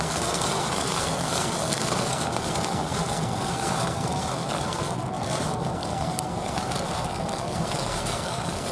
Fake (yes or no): yes